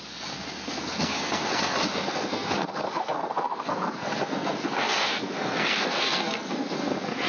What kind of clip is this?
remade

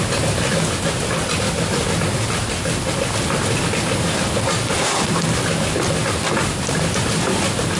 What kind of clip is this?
recorded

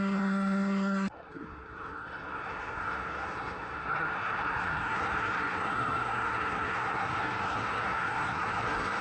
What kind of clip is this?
remade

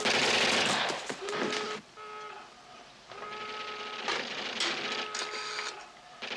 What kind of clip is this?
recorded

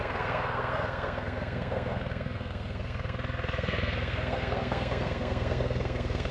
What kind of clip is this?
remade